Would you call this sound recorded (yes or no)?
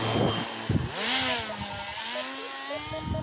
yes